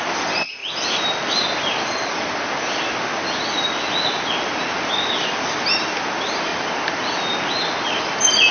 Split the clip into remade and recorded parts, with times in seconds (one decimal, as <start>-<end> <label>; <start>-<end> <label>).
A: 0.0-8.5 recorded